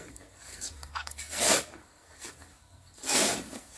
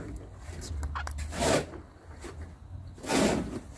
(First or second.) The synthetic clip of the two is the first